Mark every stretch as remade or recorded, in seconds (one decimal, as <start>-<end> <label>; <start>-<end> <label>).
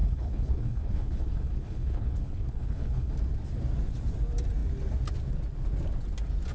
0.0-3.1 remade; 3.1-6.5 recorded